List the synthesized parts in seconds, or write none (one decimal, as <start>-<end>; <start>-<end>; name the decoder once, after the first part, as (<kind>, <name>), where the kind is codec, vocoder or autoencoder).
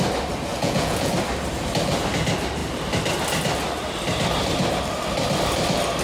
0.5-1.1 (vocoder, Vocos)